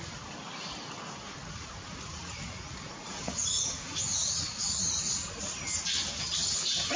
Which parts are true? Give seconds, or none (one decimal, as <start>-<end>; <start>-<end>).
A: 0.0-1.2; 5.4-7.0